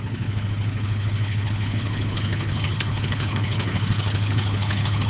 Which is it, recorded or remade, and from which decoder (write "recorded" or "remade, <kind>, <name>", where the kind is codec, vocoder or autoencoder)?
remade, codec, HILCodec